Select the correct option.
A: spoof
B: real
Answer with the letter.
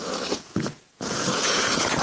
A